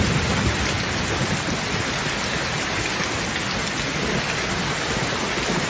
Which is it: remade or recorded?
recorded